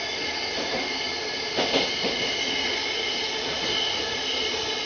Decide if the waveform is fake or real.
real